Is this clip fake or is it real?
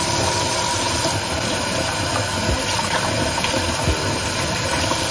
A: real